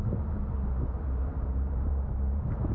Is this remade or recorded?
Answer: remade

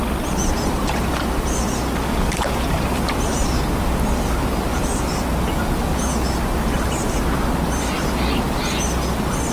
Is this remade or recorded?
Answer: recorded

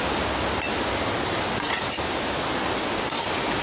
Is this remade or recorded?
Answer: recorded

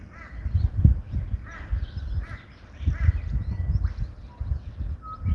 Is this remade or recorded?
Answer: recorded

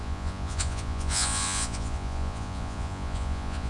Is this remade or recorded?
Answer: remade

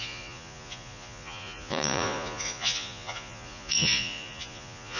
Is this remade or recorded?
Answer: remade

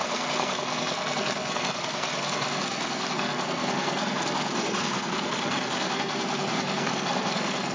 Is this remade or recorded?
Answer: remade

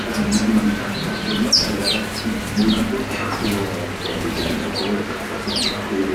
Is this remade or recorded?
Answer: recorded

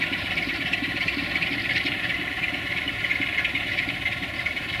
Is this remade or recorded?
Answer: remade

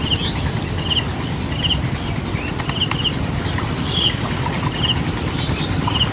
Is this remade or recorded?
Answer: recorded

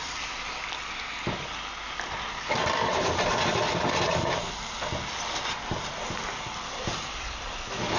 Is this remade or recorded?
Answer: recorded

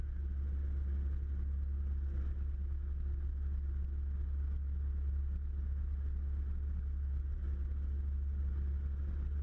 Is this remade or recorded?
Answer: recorded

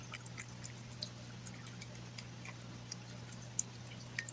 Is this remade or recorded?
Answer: recorded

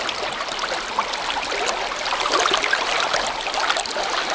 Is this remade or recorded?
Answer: recorded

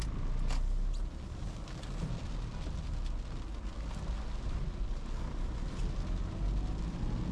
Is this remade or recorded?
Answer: recorded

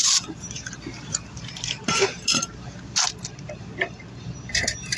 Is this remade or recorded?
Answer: remade